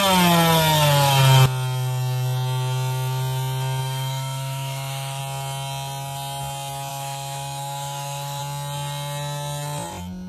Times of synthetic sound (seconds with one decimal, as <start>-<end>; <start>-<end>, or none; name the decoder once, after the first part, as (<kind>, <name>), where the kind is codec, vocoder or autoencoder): 3.8-5.2 (autoencoder, DAC-VAE); 6.9-8.4